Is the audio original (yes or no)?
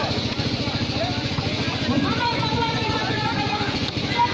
no